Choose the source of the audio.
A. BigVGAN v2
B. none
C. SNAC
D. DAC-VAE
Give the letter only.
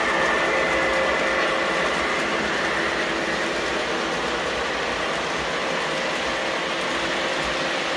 B